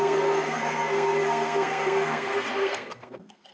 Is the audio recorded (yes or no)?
no